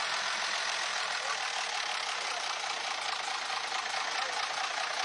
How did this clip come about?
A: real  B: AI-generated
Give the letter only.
A